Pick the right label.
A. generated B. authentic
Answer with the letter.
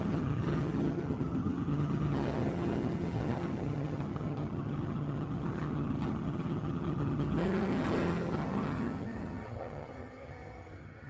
A